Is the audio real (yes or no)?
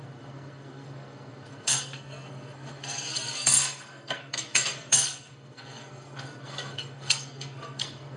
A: no